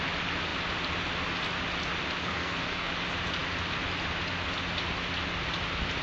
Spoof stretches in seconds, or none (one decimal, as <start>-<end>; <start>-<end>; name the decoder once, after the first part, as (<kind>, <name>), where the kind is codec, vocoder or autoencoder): 2.2-2.9 (codec, SNAC)